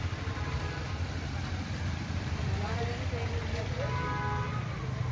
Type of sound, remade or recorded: recorded